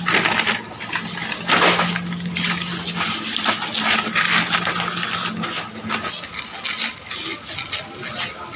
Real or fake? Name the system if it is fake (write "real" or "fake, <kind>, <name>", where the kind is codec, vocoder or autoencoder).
real